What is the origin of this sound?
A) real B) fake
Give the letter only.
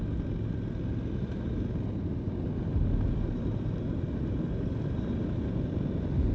A